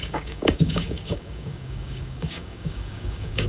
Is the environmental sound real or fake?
fake